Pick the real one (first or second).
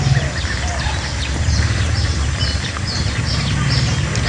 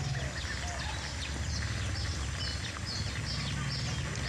second